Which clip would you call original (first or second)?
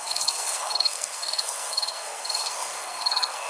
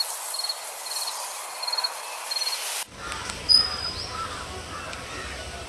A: second